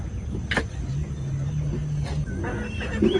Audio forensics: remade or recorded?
recorded